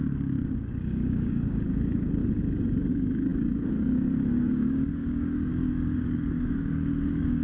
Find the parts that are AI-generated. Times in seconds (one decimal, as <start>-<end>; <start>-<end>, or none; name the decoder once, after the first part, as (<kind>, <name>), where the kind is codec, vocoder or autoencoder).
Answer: 0.0-2.2 (codec, DAC); 2.9-7.4